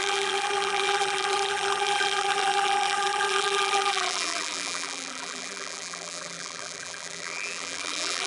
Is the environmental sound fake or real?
fake